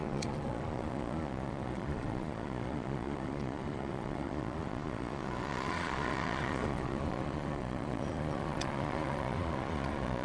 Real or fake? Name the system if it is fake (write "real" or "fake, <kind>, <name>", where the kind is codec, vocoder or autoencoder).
fake, vocoder, Vocos